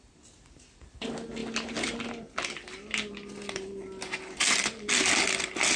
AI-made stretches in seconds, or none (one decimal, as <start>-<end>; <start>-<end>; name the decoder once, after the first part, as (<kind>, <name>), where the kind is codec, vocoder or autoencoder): none